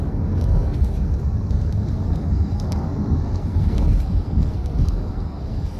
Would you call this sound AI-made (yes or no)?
yes